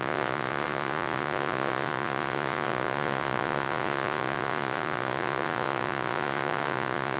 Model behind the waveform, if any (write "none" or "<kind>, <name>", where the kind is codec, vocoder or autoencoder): vocoder, Vocos